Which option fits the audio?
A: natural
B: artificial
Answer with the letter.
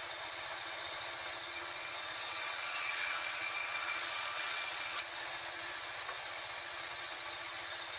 B